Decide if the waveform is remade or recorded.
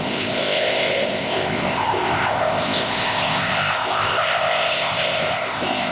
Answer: remade